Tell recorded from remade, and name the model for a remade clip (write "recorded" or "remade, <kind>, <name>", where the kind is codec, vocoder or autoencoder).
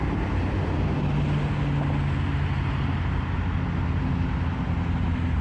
recorded